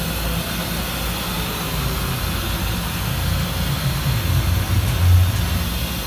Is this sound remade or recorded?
recorded